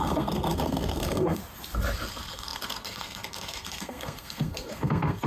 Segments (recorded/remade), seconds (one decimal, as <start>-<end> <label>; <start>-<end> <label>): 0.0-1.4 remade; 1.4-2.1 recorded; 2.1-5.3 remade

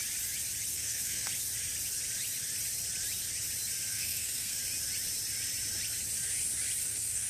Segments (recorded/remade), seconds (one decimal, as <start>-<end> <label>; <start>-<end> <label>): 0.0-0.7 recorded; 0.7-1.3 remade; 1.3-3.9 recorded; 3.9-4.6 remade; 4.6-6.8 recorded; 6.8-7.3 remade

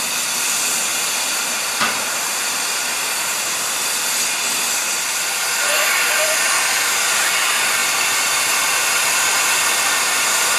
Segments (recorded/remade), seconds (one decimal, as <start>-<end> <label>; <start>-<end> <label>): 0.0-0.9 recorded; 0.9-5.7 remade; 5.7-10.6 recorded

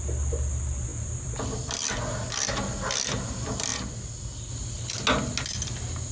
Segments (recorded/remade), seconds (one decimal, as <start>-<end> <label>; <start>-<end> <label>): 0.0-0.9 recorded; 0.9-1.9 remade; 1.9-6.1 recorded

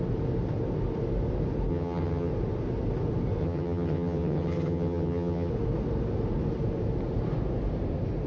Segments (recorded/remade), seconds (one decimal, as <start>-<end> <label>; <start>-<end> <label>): 0.0-1.7 recorded; 1.7-2.3 remade; 2.3-3.4 recorded; 3.4-5.5 remade; 5.5-8.3 recorded

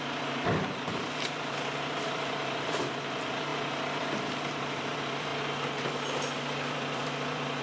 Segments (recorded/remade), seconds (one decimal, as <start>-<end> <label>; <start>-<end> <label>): 0.0-5.3 remade; 5.3-6.7 recorded; 6.7-7.6 remade

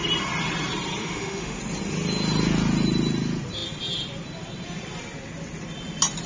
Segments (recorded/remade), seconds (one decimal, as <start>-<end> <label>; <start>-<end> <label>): 0.0-1.0 recorded; 1.0-1.6 remade; 1.6-6.3 recorded